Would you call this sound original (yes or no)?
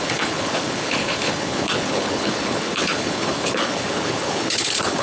no